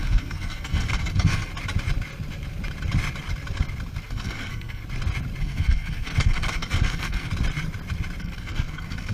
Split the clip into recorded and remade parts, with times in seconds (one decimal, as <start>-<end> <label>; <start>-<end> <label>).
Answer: 0.0-1.5 remade; 1.5-4.1 recorded; 4.1-4.8 remade; 4.8-5.4 recorded; 5.4-7.3 remade; 7.3-8.2 recorded; 8.2-9.1 remade